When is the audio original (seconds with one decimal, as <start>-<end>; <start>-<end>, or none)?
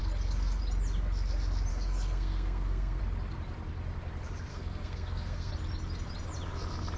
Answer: 0.6-1.7; 3.0-4.5; 5.5-7.0